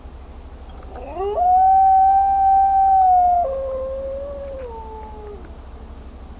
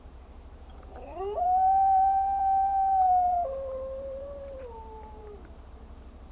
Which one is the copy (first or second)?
second